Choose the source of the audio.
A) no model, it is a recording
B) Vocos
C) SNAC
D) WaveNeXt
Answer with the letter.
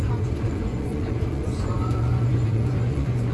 B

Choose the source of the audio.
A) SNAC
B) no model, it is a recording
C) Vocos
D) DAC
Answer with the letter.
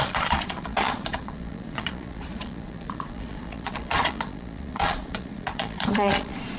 C